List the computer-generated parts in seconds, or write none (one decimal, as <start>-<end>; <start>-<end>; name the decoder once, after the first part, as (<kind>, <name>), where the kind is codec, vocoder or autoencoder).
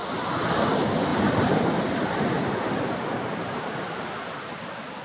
1.1-4.1 (vocoder, BigVGAN v2)